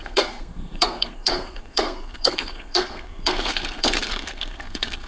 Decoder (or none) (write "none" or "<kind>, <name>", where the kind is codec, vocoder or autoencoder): codec, SNAC